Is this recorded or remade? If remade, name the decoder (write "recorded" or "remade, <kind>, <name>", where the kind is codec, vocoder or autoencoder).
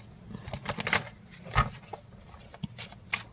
recorded